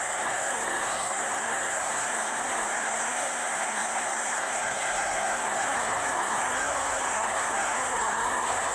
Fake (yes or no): yes